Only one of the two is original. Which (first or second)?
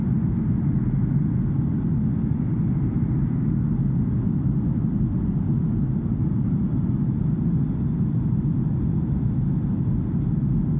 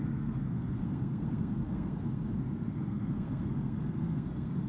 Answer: first